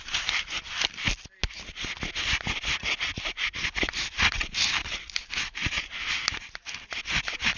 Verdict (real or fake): real